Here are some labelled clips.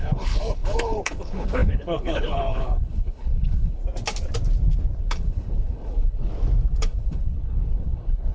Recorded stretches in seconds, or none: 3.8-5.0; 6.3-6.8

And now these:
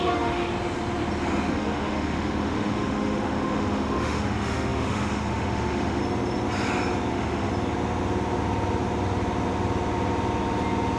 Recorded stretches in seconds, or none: 0.5-1.5; 6.0-7.1; 7.5-11.0